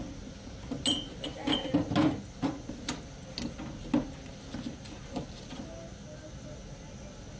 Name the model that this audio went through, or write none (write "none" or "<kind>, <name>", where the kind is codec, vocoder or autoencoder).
none